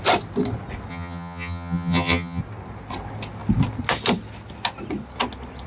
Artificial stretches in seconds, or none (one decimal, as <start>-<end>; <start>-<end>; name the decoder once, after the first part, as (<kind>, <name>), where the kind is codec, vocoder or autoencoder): 0.9-2.4 (vocoder, HiFi-GAN)